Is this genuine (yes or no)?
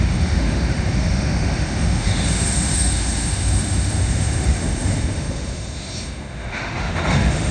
no